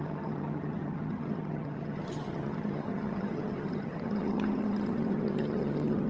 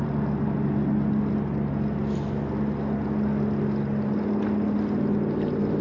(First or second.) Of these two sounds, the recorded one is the second